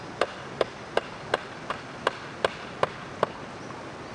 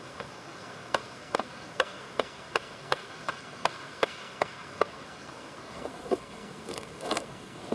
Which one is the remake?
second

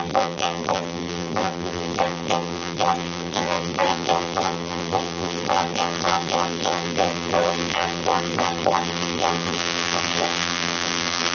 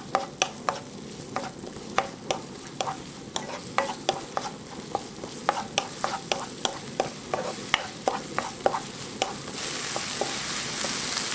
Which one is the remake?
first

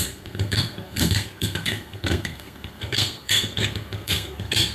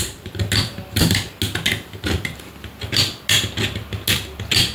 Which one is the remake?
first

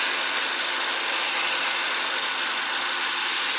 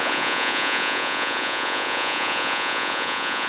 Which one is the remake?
second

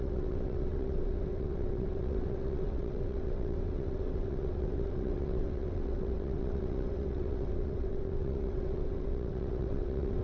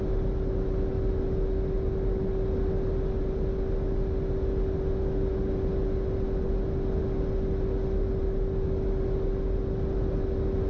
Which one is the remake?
first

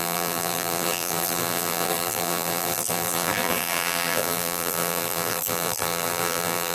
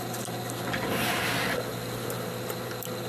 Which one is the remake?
first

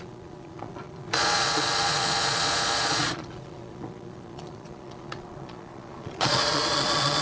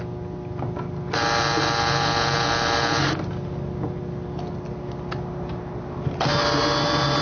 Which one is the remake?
first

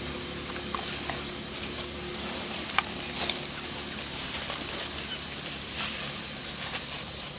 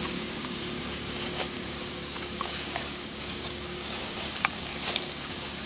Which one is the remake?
second